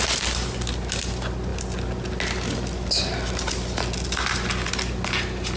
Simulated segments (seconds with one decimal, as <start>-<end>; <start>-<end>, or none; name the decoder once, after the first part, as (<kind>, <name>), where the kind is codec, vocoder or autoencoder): none